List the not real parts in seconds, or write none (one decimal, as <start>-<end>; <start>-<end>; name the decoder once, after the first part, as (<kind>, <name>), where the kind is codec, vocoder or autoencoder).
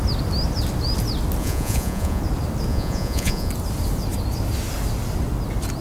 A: 1.4-2.2 (vocoder, Vocos); 2.7-3.5